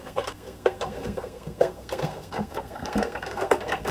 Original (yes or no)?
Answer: no